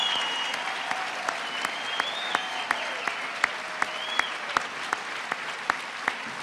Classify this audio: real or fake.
real